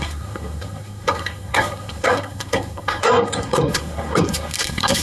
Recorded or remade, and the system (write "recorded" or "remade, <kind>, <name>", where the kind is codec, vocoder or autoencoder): remade, codec, SNAC